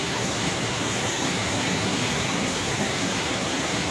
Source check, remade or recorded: remade